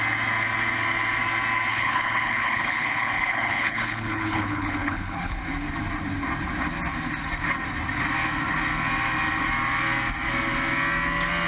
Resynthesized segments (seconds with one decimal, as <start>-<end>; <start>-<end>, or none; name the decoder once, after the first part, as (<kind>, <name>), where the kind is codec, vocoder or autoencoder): 1.7-5.4 (codec, HILCodec)